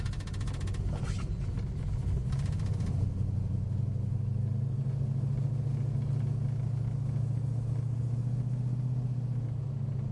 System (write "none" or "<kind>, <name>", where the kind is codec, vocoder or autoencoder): none